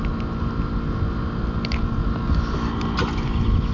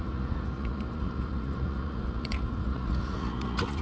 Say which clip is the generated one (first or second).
second